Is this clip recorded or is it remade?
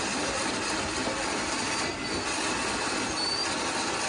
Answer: recorded